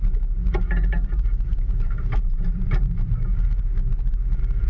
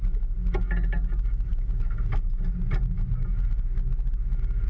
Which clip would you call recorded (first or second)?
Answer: second